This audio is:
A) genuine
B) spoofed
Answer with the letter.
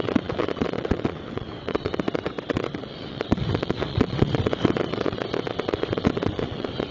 B